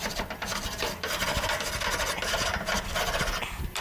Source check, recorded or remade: recorded